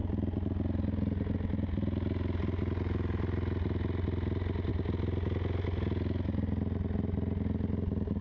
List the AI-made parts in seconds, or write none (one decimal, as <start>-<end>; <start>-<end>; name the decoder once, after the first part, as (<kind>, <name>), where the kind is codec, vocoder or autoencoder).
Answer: none